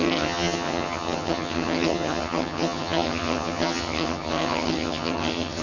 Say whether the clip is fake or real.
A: fake